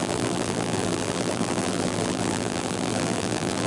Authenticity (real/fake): fake